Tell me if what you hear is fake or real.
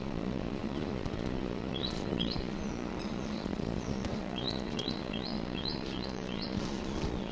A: fake